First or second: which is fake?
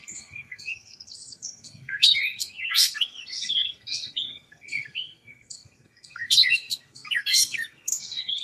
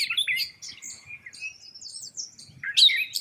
first